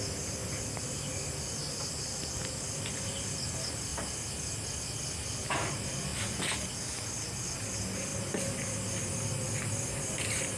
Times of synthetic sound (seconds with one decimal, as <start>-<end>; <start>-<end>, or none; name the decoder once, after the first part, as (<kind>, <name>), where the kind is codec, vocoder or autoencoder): none